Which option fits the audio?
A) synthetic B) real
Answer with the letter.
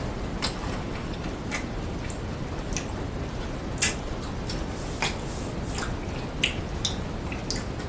B